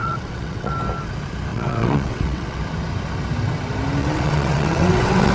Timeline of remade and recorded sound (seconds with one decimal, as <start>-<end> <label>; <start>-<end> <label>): 0.0-0.7 remade; 0.7-1.5 recorded; 1.5-2.6 remade; 2.6-4.0 recorded; 4.0-5.3 remade